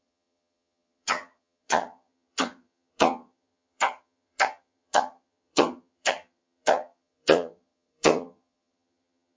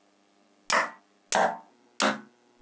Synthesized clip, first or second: first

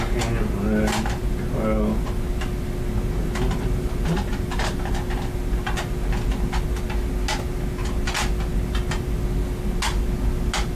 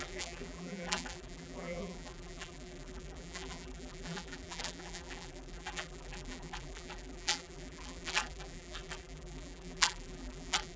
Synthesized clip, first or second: second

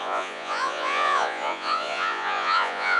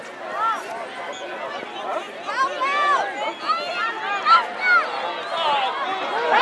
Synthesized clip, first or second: first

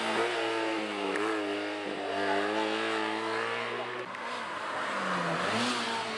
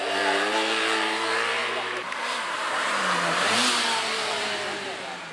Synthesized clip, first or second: second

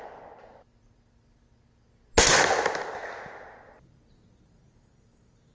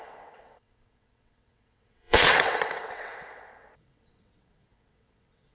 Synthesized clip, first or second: second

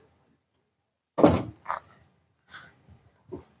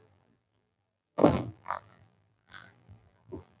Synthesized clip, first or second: second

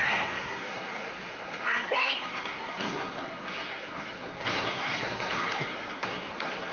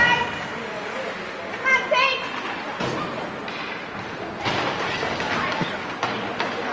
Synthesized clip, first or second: first